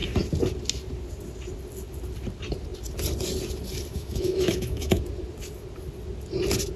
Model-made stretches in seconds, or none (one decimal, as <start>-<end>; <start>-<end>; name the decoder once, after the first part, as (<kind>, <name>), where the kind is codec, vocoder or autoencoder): 3.9-5.0 (autoencoder, DAC-VAE)